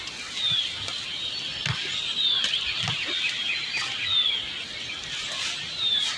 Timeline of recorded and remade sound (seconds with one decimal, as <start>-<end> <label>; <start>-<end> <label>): 0.0-6.2 recorded